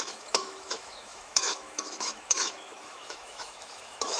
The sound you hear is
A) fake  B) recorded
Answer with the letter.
A